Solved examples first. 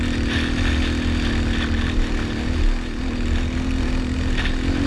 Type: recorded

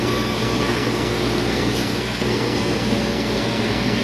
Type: remade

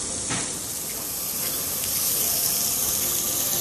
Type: recorded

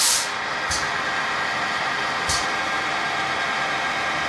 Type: recorded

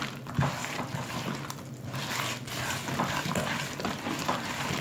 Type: recorded